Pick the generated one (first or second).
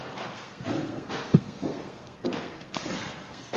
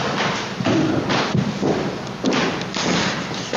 first